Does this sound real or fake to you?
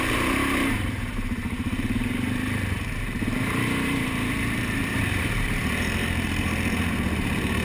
fake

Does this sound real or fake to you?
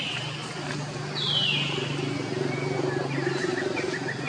real